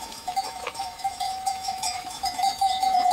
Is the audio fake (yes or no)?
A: yes